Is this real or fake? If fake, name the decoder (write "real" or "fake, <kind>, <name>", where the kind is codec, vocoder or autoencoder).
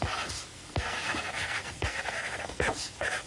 fake, codec, SNAC